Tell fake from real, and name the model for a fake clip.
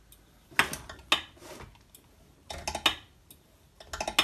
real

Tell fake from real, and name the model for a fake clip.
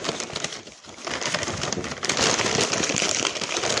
real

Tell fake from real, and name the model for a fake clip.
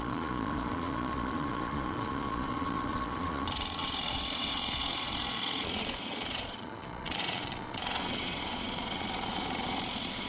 fake, vocoder, Vocos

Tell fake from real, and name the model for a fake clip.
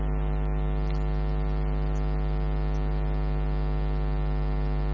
real